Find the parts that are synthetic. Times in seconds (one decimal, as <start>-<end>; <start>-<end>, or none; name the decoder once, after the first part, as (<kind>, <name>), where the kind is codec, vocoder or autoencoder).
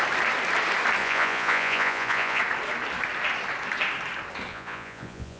1.0-2.4 (vocoder, Vocos); 4.5-5.4